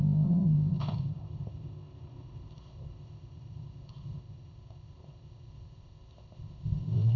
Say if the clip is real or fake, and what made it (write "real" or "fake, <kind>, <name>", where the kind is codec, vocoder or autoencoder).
fake, codec, ZipCodec